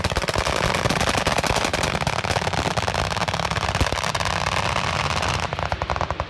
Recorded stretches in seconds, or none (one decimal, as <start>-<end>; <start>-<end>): 0.0-6.3